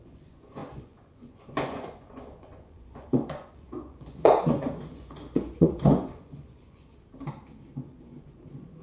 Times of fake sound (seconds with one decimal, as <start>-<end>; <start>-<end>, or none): 0.0-6.9; 7.7-8.8